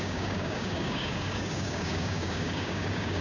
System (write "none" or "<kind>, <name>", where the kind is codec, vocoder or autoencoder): codec, DAC